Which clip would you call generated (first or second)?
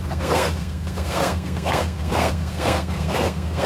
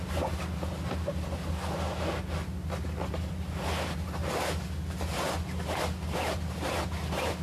first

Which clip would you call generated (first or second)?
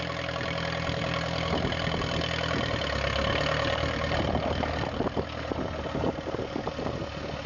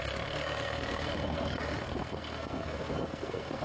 second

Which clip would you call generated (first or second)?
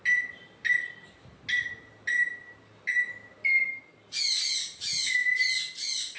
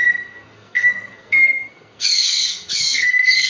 second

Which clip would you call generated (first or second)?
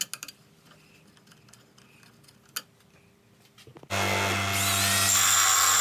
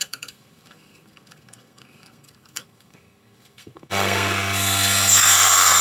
second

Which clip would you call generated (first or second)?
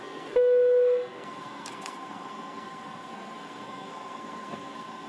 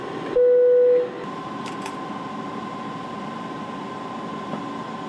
first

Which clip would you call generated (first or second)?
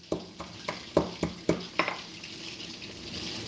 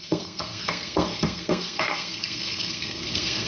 second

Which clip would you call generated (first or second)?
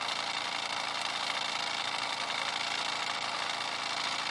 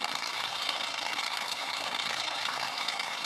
second